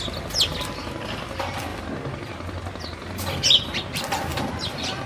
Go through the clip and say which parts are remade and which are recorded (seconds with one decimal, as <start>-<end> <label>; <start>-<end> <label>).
0.0-4.3 recorded; 4.3-5.1 remade